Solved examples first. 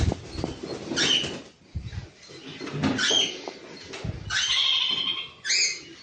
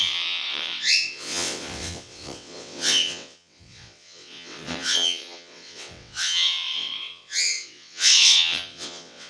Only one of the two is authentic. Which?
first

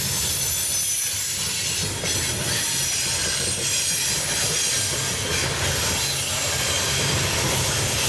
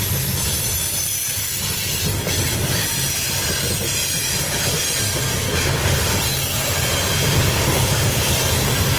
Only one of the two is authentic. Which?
first